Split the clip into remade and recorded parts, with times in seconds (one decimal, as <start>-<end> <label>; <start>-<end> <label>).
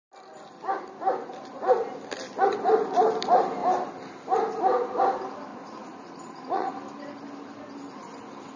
0.0-5.5 recorded; 5.5-6.7 remade; 6.7-8.6 recorded